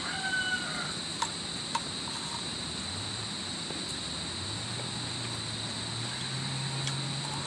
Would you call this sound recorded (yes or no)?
yes